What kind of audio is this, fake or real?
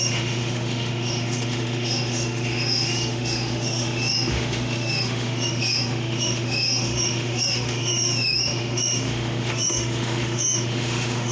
fake